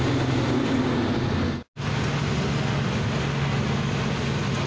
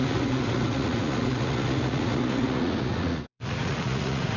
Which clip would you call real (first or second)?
first